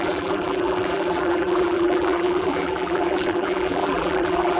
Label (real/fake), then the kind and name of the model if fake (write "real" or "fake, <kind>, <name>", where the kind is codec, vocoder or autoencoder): fake, vocoder, BigVGAN v2